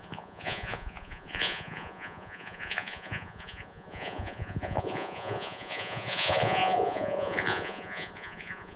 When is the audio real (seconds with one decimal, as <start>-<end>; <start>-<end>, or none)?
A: none